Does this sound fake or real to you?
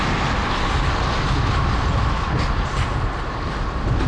real